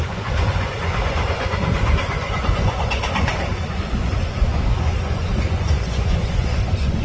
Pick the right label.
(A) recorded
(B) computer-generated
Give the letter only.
B